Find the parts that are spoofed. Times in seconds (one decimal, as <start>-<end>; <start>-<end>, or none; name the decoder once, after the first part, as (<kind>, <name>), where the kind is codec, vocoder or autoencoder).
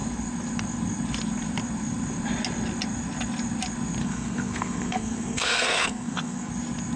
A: 4.0-6.5 (codec, SNAC)